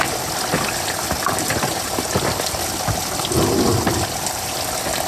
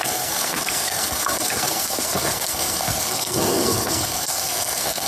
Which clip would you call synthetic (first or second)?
second